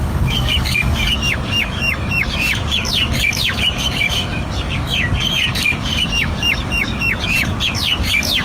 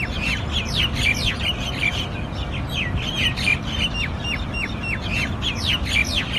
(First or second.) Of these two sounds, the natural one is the second